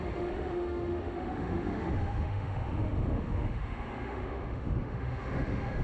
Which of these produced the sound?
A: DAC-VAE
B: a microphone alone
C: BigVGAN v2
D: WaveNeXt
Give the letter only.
A